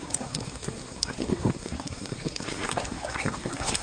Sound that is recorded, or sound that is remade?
remade